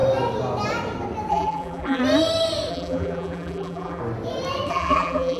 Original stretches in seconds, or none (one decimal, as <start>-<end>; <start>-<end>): 0.0-1.3; 2.0-2.7; 4.0-4.7